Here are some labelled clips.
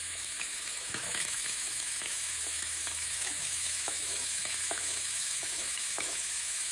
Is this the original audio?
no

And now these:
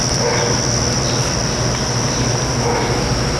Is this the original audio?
yes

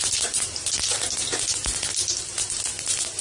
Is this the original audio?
yes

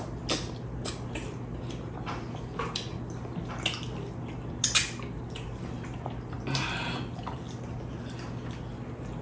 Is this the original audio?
yes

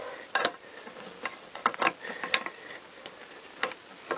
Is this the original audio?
yes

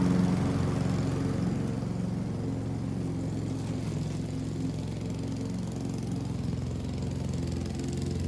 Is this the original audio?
yes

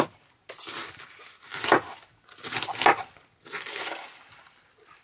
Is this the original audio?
yes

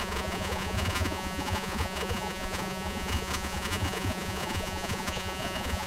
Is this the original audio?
no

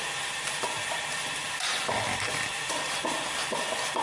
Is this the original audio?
yes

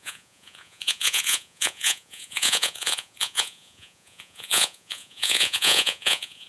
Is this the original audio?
no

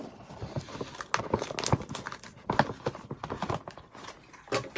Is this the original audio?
yes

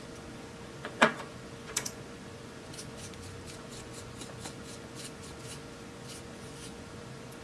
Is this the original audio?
no